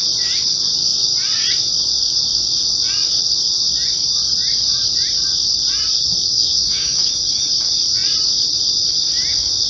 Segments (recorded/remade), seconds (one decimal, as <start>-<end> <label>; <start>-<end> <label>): 0.0-6.3 recorded; 6.3-7.5 remade; 7.5-9.7 recorded

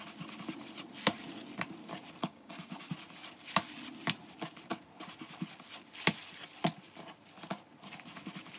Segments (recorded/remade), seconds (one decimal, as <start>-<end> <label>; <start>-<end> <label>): 0.0-2.2 recorded; 2.2-2.9 remade; 2.9-8.6 recorded

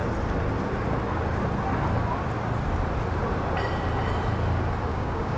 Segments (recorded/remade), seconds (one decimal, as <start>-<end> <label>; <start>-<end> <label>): 0.0-4.9 recorded; 4.9-5.4 remade

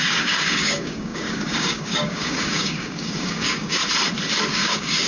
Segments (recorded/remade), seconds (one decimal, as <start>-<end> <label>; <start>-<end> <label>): 0.0-3.8 remade; 3.8-4.5 recorded; 4.5-5.1 remade

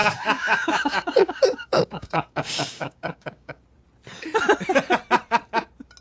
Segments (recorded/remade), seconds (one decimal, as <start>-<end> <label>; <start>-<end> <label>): 0.0-3.6 remade; 3.6-6.0 recorded

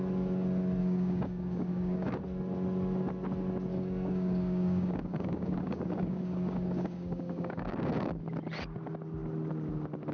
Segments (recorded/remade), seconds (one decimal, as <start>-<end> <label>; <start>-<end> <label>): 0.0-0.8 recorded; 0.8-2.2 remade; 2.2-3.7 recorded; 3.7-8.2 remade; 8.2-10.1 recorded